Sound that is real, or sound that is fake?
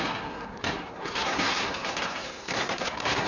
fake